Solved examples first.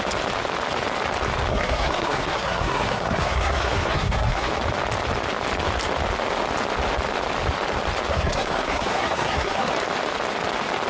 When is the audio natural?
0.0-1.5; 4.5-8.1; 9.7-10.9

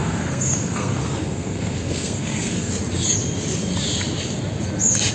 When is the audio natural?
2.7-5.1